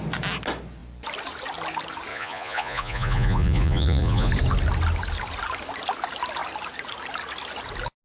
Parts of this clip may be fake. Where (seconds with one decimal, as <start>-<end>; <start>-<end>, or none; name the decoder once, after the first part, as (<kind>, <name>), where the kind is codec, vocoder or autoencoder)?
2.1-4.3 (vocoder, Vocos)